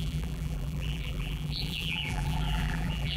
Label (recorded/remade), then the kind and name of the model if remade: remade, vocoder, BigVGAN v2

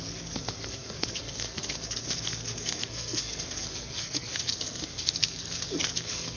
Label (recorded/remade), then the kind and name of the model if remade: remade, codec, SNAC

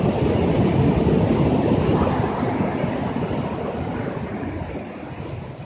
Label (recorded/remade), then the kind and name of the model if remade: recorded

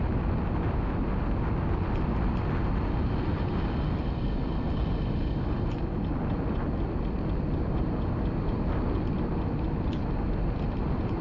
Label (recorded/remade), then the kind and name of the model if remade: recorded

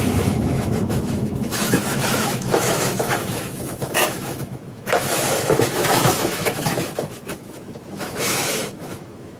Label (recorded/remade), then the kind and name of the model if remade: remade, autoencoder, DAC-VAE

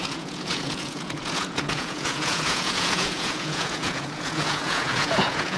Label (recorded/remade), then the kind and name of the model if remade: remade, vocoder, Vocos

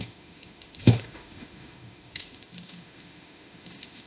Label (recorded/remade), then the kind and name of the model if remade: remade, autoencoder, DAC-VAE